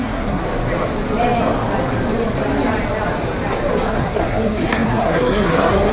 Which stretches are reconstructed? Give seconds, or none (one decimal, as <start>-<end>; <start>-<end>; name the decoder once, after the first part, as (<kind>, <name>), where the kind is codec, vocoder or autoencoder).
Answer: 0.0-0.4 (codec, SNAC); 3.9-5.9